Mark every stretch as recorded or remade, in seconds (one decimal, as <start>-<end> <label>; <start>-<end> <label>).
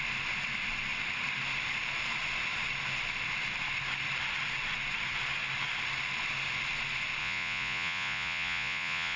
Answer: 0.0-7.2 recorded; 7.2-9.2 remade